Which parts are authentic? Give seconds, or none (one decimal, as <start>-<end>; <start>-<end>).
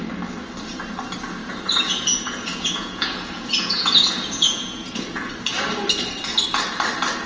0.0-1.4; 5.3-7.3